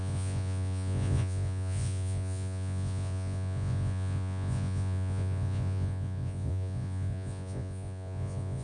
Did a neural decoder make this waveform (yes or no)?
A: yes